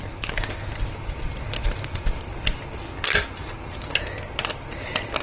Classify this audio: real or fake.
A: real